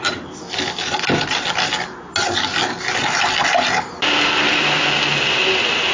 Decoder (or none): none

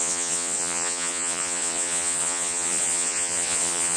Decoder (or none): vocoder, Vocos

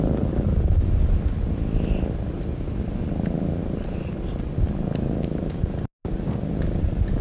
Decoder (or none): none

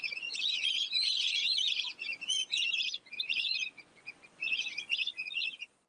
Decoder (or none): vocoder, Vocos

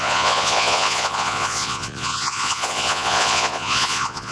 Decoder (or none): vocoder, Vocos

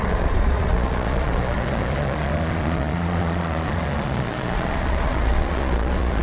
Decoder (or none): vocoder, Vocos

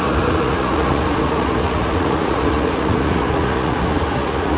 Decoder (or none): vocoder, Vocos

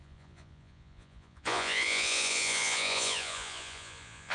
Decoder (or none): vocoder, Vocos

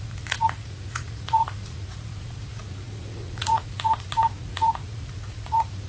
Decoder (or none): vocoder, Vocos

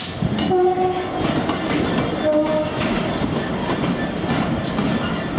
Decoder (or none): none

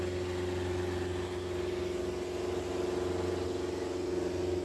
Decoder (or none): none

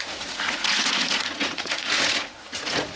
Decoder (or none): vocoder, Vocos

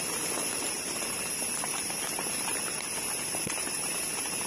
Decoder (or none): none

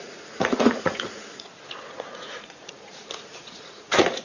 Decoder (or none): vocoder, Vocos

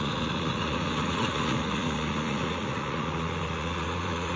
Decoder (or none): vocoder, Vocos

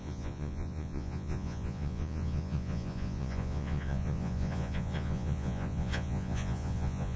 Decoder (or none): vocoder, Vocos